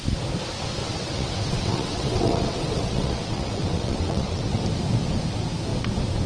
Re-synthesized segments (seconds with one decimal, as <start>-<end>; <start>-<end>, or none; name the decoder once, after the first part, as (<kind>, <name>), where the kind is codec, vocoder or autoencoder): 0.8-4.6 (vocoder, WaveNeXt)